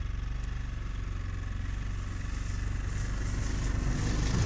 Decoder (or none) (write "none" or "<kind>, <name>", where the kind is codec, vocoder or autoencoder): none